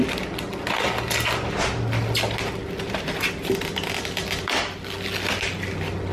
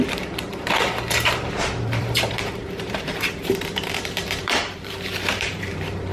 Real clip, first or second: first